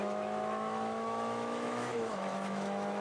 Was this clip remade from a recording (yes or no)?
yes